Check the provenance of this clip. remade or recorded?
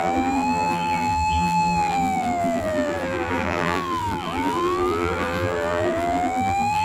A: remade